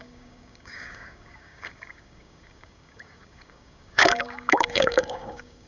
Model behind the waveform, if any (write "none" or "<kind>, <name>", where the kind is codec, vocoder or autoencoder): codec, DAC